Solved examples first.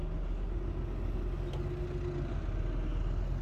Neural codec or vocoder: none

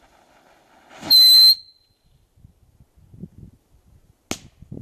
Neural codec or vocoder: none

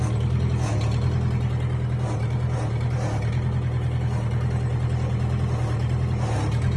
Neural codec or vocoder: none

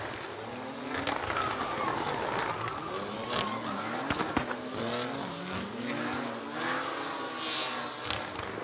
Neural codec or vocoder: none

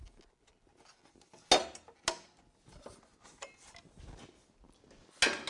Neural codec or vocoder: none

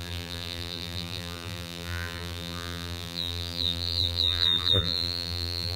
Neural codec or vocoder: vocoder, BigVGAN v2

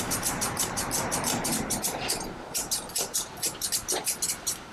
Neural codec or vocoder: vocoder, BigVGAN v2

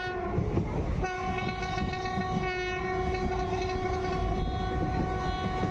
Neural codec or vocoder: none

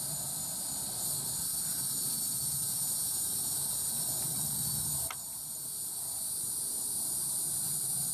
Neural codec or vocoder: none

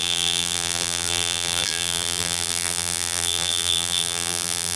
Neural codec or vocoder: vocoder, BigVGAN v2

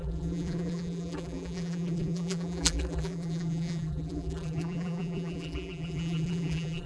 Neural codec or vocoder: vocoder, BigVGAN v2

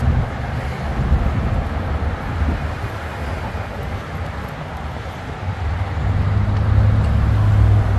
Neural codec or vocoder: none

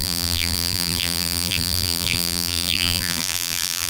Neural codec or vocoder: vocoder, BigVGAN v2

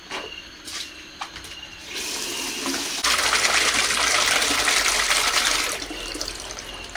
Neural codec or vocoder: none